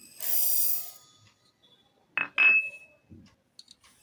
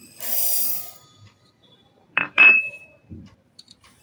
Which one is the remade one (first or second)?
second